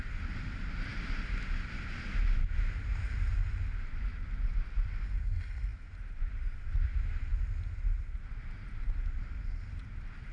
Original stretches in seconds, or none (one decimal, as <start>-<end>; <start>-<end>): 0.0-10.3